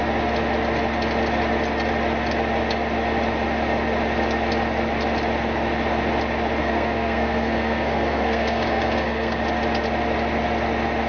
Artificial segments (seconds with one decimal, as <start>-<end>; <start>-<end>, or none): 6.6-9.4